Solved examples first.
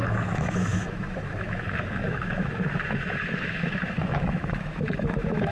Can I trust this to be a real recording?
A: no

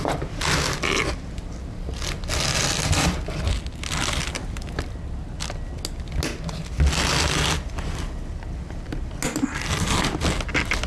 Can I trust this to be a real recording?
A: yes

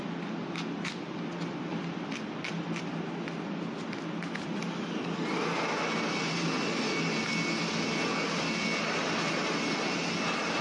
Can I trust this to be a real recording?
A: yes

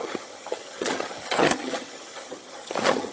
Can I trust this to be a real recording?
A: no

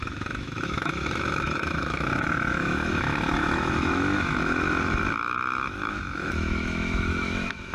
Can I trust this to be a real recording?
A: no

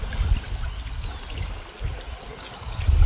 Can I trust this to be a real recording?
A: yes